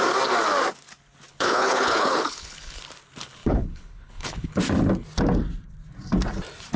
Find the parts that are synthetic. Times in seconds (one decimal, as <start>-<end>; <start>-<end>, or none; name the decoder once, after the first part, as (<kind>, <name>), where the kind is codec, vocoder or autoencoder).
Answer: 1.3-2.8 (codec, HILCodec); 3.4-4.6